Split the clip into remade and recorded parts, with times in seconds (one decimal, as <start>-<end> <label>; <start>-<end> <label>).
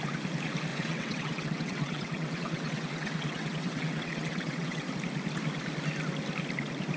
0.0-0.7 recorded; 0.7-4.9 remade; 4.9-7.0 recorded